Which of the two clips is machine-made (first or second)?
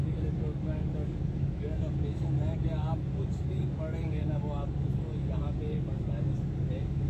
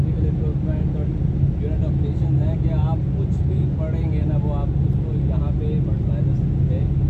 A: first